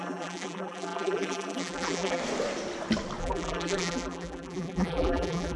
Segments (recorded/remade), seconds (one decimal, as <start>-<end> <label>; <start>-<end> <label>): 0.0-2.2 remade; 2.2-3.2 recorded; 3.2-5.6 remade